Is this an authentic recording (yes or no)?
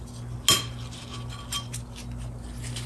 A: yes